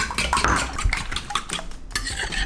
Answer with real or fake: real